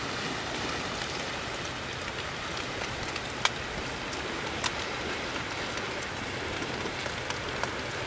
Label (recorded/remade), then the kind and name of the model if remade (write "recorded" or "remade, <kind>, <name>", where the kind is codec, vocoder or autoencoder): recorded